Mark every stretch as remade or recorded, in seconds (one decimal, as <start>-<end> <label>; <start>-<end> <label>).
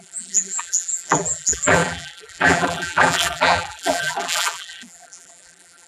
0.0-5.9 remade